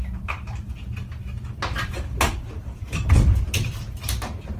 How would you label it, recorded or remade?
remade